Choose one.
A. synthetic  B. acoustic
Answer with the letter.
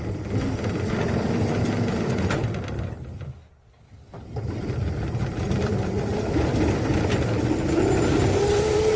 B